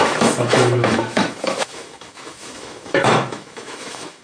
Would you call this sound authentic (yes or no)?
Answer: no